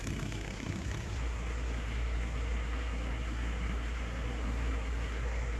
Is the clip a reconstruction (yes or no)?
yes